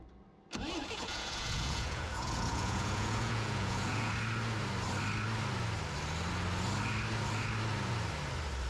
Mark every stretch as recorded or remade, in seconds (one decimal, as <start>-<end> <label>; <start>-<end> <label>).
0.0-0.8 recorded; 0.8-4.1 remade; 4.1-8.7 recorded